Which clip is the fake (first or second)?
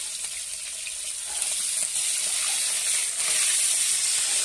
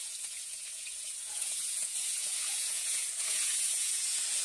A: second